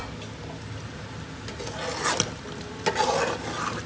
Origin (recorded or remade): recorded